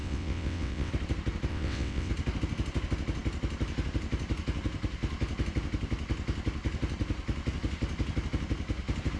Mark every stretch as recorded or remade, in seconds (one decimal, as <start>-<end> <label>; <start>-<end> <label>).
0.0-0.9 remade; 0.9-1.5 recorded; 1.5-2.1 remade; 2.1-9.2 recorded